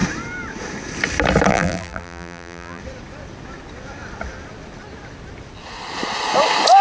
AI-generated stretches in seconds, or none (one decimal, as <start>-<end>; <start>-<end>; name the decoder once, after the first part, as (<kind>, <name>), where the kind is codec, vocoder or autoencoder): 1.5-2.8 (vocoder, BigVGAN v2)